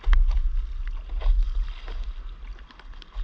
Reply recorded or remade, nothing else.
recorded